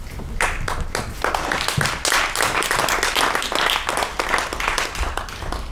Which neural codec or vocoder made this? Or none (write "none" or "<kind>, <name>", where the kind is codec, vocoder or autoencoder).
none